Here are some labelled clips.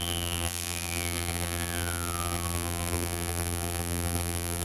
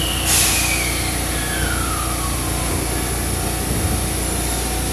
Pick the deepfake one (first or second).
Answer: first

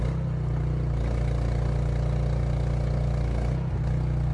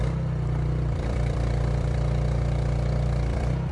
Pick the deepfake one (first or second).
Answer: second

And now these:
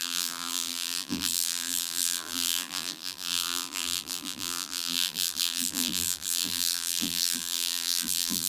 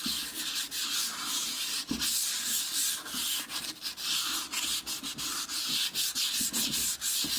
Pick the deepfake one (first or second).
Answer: first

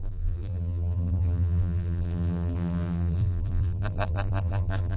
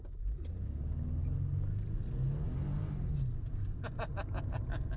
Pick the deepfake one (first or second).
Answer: first